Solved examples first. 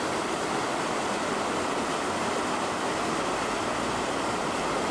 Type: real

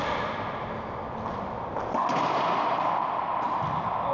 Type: real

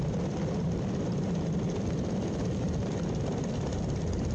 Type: fake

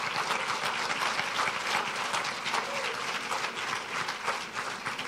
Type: real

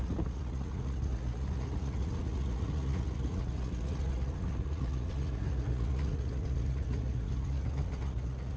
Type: fake